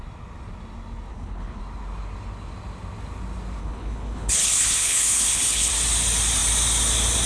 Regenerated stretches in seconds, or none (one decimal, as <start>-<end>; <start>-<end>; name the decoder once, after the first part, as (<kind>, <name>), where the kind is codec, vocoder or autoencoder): 1.1-1.6 (codec, HILCodec); 3.6-5.7